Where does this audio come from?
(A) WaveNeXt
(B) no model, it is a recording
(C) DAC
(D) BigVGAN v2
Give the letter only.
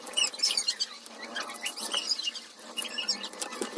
D